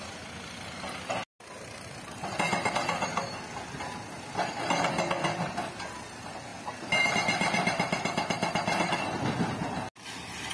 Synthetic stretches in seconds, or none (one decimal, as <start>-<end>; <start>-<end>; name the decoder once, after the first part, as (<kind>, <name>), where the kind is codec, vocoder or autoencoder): none